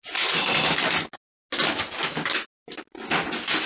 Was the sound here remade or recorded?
recorded